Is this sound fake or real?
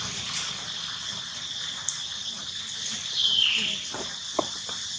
real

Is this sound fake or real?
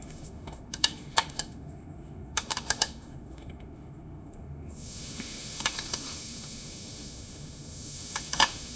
fake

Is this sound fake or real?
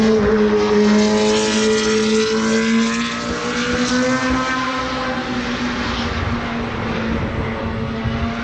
real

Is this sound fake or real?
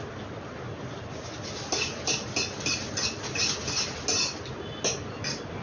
real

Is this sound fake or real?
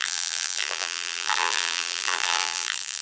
fake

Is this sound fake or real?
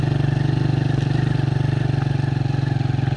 real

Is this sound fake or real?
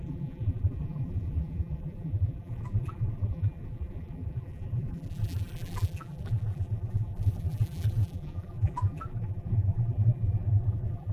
fake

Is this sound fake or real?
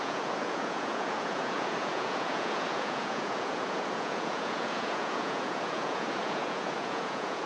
fake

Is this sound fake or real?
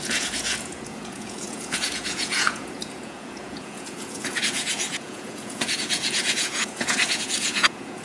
fake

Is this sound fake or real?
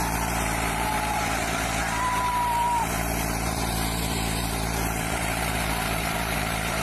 fake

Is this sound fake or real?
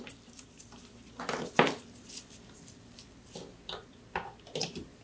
real